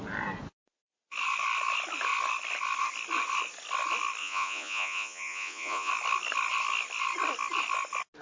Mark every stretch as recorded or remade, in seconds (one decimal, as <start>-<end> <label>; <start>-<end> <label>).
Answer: 0.0-4.2 recorded; 4.2-5.9 remade; 5.9-8.2 recorded